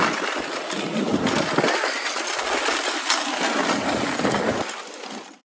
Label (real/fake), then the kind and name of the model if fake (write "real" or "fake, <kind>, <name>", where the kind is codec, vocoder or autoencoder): real